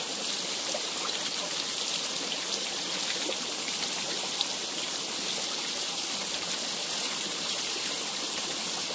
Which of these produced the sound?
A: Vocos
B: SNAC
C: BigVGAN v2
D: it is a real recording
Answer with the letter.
D